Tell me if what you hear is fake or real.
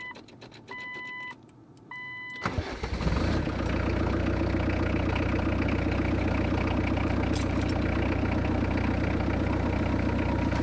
real